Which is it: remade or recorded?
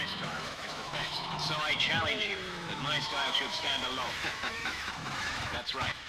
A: remade